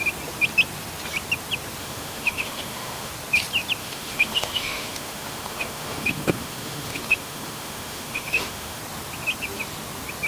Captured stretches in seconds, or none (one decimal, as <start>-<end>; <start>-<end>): 0.0-1.8; 3.1-3.8; 8.8-10.3